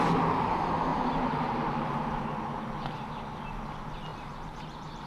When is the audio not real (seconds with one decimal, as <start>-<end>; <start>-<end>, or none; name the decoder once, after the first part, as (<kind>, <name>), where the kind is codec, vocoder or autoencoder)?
0.9-2.9 (vocoder, BigVGAN v2); 4.1-5.1